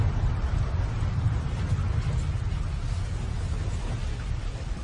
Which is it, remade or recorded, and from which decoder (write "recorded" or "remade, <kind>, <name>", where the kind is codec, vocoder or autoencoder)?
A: recorded